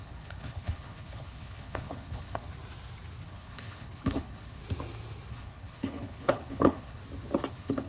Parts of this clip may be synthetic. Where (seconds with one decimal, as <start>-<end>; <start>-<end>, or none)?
0.0-2.5; 3.2-4.6; 5.3-7.0; 7.5-7.9